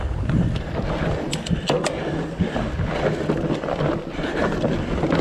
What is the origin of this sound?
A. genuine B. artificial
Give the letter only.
A